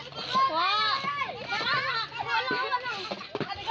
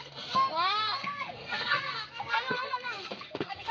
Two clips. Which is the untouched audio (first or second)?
first